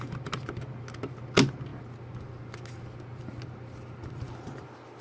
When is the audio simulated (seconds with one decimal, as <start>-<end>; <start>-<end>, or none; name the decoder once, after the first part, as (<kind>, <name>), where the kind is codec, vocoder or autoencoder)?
none